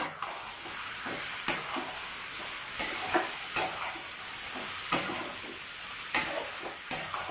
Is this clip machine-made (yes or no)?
no